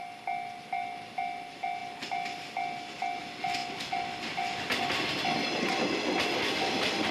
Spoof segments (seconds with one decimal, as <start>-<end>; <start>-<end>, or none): none